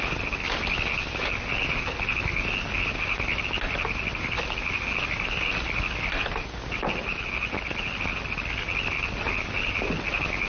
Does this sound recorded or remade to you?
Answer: recorded